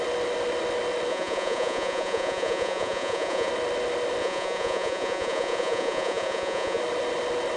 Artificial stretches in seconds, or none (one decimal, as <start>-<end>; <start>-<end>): 1.1-3.5; 4.2-6.8